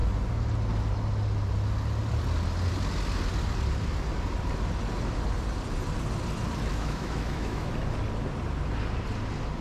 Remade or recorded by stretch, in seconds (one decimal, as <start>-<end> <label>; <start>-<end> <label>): 0.0-6.7 recorded; 6.7-7.7 remade; 7.7-9.6 recorded